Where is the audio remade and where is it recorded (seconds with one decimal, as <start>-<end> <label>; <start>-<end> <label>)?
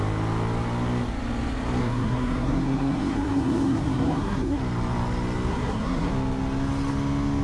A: 0.0-1.8 recorded; 1.8-4.6 remade; 4.6-5.5 recorded; 5.5-6.1 remade; 6.1-7.4 recorded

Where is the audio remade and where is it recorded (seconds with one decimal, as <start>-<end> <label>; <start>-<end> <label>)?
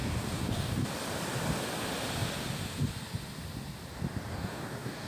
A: 0.0-0.9 remade; 0.9-4.3 recorded; 4.3-5.1 remade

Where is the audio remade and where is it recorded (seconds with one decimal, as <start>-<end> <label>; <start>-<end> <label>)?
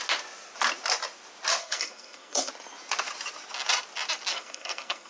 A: 0.0-1.6 recorded; 1.6-2.5 remade; 2.5-4.3 recorded; 4.3-5.1 remade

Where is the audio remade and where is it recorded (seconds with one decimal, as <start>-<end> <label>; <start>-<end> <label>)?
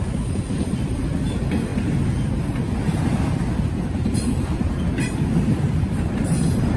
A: 0.0-6.8 remade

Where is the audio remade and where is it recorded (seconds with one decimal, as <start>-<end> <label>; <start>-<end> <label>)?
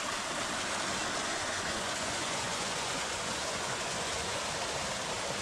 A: 0.0-1.2 recorded; 1.2-4.4 remade; 4.4-5.4 recorded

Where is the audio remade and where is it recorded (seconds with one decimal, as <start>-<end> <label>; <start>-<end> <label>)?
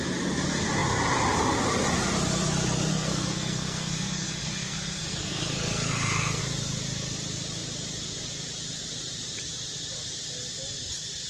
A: 0.0-2.9 recorded; 2.9-6.4 remade; 6.4-11.3 recorded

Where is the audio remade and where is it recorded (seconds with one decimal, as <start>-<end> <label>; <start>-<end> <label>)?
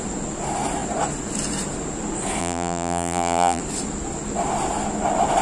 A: 0.0-2.4 recorded; 2.4-3.6 remade; 3.6-5.4 recorded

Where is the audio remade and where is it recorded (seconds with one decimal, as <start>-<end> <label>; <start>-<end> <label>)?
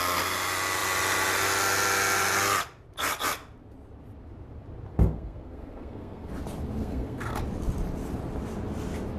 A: 0.0-4.9 recorded; 4.9-6.3 remade; 6.3-6.8 recorded; 6.8-7.4 remade; 7.4-9.2 recorded